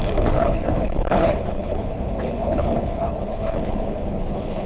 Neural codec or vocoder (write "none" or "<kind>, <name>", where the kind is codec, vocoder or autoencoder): codec, HILCodec